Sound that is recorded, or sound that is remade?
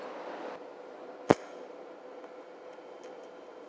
recorded